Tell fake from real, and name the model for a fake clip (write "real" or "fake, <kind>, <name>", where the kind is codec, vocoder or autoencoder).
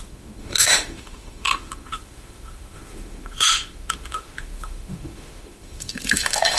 fake, autoencoder, DAC-VAE